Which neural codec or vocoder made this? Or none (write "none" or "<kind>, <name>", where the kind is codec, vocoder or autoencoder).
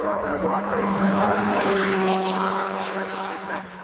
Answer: codec, HILCodec